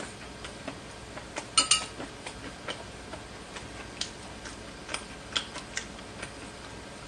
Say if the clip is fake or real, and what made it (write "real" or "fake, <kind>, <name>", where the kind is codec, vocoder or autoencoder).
real